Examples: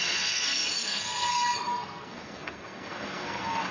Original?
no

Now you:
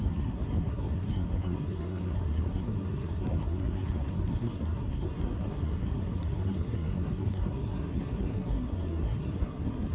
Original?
no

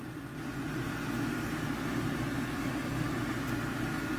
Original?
yes